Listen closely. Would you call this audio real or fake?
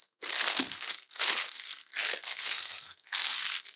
fake